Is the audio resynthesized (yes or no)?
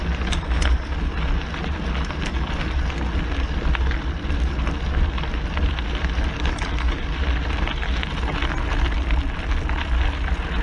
no